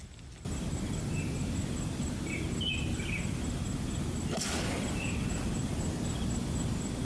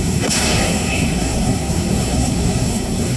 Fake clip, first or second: second